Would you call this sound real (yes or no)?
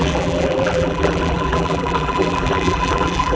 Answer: no